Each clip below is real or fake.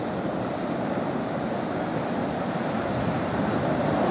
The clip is real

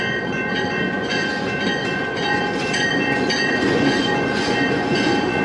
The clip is fake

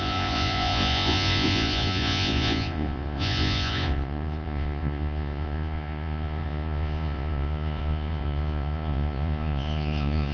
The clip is fake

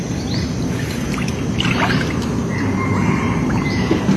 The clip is real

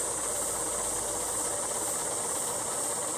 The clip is real